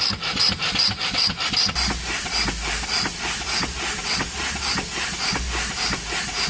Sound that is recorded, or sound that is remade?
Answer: recorded